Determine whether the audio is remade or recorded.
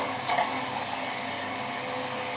remade